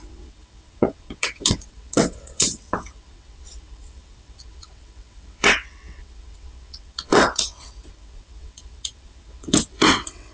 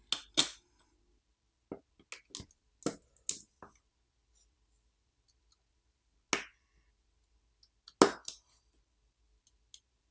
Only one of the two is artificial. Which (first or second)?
first